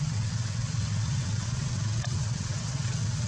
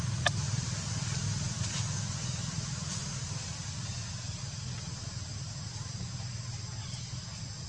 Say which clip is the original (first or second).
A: second